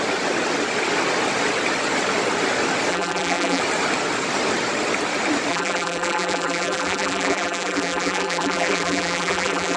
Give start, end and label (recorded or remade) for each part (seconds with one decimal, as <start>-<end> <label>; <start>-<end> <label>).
0.0-2.9 recorded; 2.9-3.6 remade; 3.6-5.5 recorded; 5.5-9.8 remade